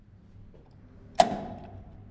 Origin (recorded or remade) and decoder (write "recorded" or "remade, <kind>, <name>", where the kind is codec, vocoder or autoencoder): recorded